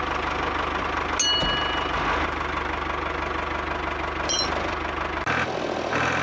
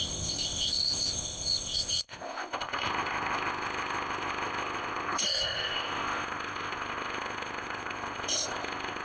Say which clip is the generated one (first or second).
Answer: second